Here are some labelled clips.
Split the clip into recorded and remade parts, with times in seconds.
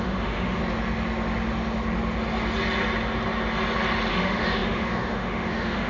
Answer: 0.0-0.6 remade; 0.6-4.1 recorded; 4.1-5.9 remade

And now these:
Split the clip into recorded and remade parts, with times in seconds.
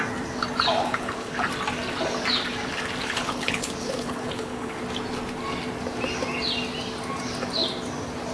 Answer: 0.0-0.8 recorded; 0.8-1.5 remade; 1.5-3.0 recorded; 3.0-4.8 remade; 4.8-8.3 recorded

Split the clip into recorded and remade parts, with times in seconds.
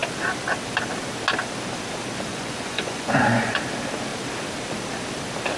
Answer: 0.0-2.3 recorded; 2.3-3.6 remade; 3.6-5.6 recorded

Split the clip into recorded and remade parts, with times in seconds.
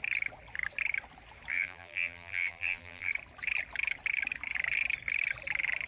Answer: 0.0-1.5 recorded; 1.5-3.1 remade; 3.1-5.9 recorded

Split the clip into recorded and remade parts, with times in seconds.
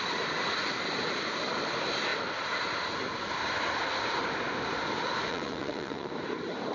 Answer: 0.0-5.3 recorded; 5.3-6.1 remade; 6.1-6.7 recorded